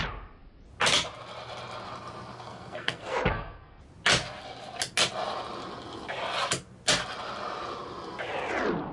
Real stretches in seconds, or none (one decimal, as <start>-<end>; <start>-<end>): 0.0-2.3; 3.8-8.9